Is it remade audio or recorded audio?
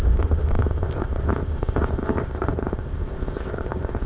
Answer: remade